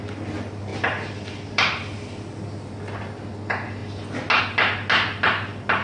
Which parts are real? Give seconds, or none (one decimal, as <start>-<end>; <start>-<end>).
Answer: 0.0-0.7; 2.6-5.8